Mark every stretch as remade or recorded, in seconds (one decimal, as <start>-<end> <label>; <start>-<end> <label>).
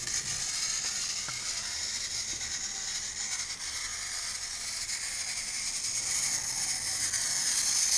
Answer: 0.0-3.9 recorded; 3.9-4.6 remade; 4.6-8.0 recorded